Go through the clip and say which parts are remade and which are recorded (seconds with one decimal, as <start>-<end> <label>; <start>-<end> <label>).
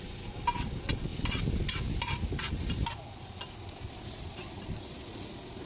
0.0-5.7 recorded